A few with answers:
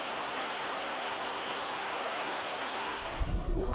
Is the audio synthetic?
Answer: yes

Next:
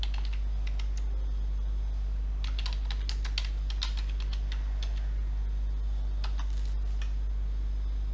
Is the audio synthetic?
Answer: no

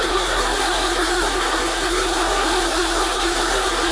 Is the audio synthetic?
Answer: yes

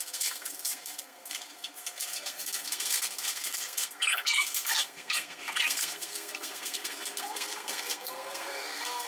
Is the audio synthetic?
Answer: yes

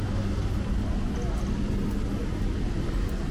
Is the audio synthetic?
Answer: no